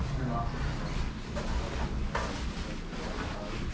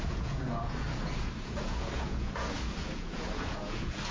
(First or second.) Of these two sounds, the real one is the first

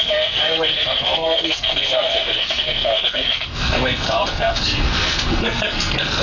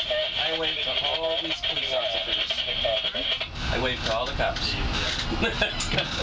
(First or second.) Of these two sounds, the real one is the second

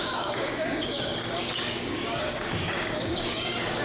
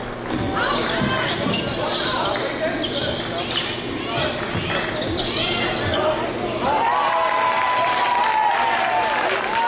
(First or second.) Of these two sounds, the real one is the second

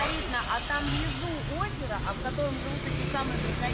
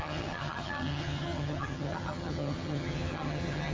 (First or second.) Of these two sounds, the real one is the first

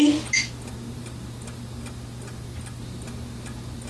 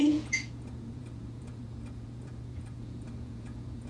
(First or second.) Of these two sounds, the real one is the first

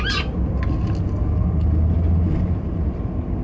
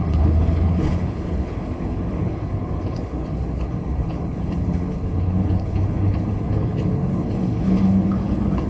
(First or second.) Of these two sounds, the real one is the first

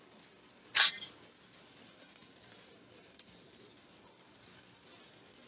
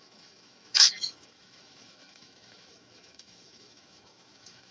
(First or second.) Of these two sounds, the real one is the first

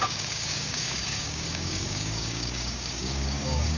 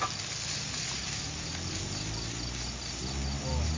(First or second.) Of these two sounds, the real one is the second